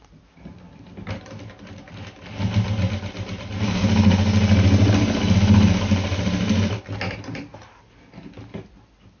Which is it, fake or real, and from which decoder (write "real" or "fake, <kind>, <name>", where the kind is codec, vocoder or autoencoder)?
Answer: real